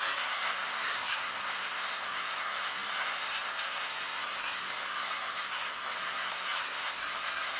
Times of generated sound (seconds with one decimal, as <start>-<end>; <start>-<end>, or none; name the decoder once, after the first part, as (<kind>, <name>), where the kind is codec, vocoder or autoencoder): 0.0-7.6 (codec, SNAC)